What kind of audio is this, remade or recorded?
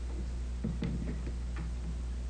recorded